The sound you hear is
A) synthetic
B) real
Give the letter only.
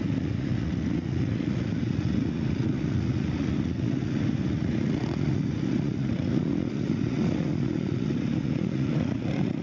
A